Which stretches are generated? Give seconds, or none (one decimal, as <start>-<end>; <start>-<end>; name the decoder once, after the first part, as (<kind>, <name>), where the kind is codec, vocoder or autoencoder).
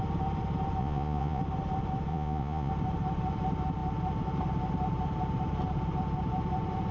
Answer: 0.8-1.4 (vocoder, Vocos); 2.1-2.7